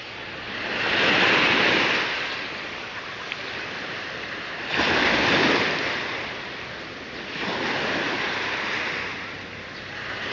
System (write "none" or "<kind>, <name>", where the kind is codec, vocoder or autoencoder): none